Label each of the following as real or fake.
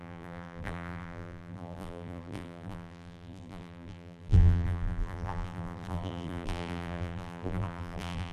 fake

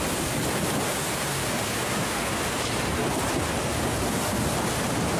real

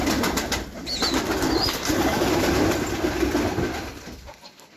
real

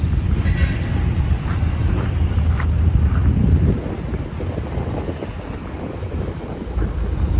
fake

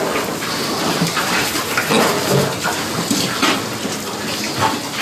real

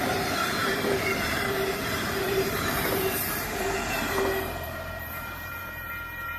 fake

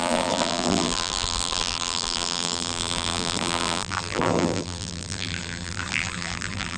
fake